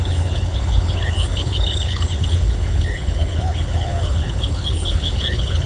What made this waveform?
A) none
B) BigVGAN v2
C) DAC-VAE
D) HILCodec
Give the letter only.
D